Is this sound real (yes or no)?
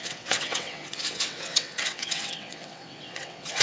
no